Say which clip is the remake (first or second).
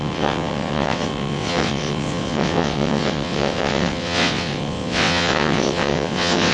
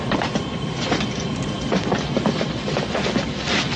first